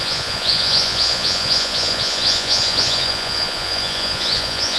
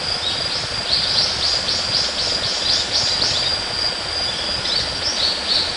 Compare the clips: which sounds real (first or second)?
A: second